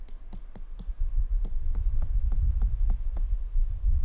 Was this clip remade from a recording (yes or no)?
no